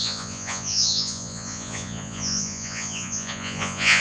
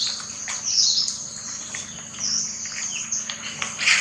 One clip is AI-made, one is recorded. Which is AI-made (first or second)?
first